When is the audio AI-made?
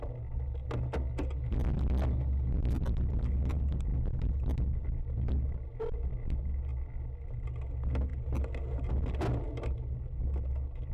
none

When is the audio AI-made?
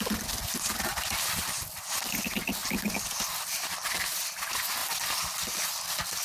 0.9-1.6 (vocoder, BigVGAN v2); 2.6-4.3; 4.8-5.7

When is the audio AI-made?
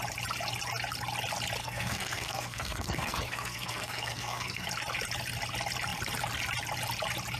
1.6-4.7 (codec, SNAC)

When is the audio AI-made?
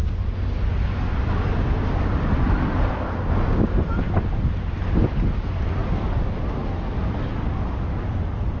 none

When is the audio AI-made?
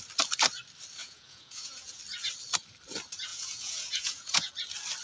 1.0-2.0 (vocoder, Vocos); 3.3-4.5